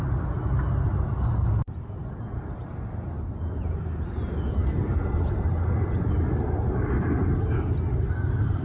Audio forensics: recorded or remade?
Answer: recorded